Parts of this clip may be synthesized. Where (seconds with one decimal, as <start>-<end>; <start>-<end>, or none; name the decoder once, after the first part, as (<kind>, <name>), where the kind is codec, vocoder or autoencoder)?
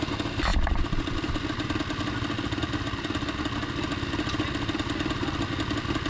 none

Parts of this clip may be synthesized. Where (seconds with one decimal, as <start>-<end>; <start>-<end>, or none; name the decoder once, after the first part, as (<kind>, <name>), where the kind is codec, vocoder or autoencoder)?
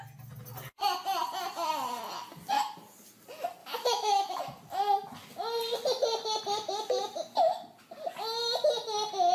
3.6-4.4 (autoencoder, DAC-VAE)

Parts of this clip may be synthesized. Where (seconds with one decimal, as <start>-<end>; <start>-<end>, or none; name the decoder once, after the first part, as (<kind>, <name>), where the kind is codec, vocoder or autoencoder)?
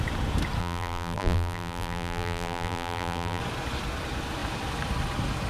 0.6-3.4 (vocoder, BigVGAN v2)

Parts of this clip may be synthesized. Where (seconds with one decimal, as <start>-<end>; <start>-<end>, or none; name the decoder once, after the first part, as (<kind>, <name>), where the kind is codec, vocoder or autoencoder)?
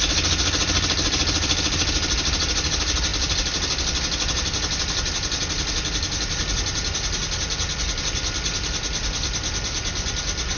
none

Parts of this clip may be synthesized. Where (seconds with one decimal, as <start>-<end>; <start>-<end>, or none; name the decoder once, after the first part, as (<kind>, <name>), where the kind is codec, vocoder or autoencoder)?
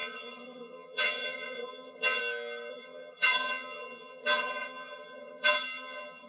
0.0-2.2 (vocoder, HiFi-GAN); 2.7-6.3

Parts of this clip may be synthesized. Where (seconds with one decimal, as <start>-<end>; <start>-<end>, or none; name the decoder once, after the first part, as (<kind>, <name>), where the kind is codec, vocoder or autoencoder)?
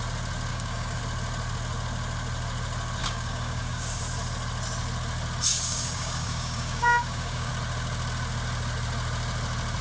0.5-1.0 (codec, DAC); 3.0-4.0; 5.5-7.5